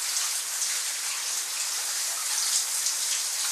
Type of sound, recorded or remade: recorded